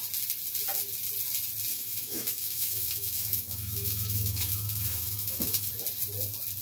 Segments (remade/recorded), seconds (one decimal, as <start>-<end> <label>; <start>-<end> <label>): 0.0-1.7 recorded; 1.7-5.7 remade; 5.7-6.6 recorded